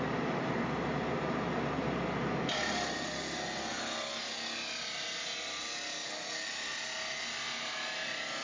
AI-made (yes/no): no